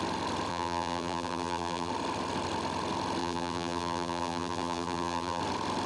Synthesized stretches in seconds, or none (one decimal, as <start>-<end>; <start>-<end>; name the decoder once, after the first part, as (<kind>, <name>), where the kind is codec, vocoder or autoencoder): 0.5-1.9 (vocoder, BigVGAN v2); 3.2-5.4